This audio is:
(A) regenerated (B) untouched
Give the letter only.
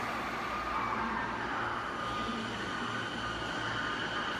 B